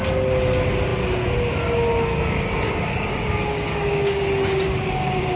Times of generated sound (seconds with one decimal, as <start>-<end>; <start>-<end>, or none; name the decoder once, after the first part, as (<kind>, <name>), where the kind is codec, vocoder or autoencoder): 2.1-4.9 (codec, DAC)